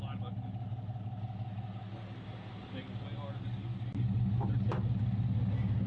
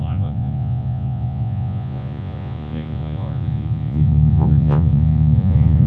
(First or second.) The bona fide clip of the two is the first